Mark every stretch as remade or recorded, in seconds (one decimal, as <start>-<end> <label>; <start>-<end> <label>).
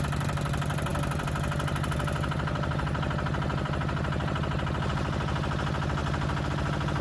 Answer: 0.0-7.0 recorded